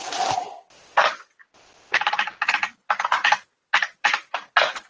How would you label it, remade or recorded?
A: recorded